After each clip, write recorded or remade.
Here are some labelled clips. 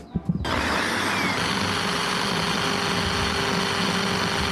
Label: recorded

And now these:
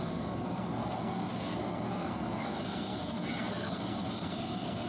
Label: remade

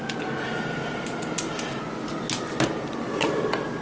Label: recorded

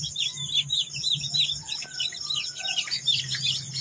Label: recorded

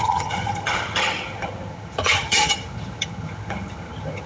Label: remade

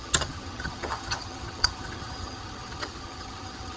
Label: remade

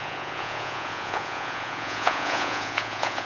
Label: remade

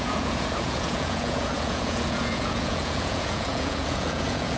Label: remade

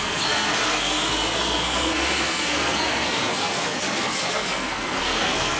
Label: remade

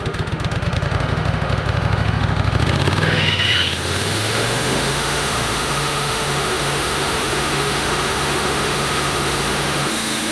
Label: remade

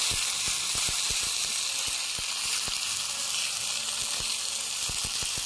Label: recorded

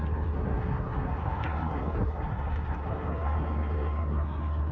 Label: remade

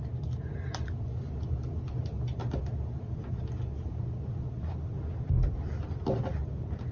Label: recorded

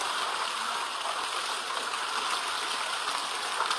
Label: recorded